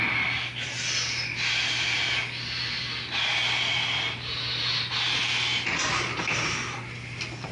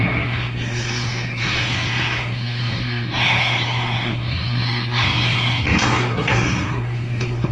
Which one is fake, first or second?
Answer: second